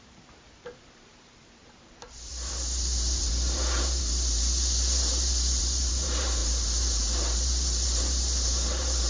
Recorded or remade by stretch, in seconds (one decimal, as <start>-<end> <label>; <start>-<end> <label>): 0.0-9.1 remade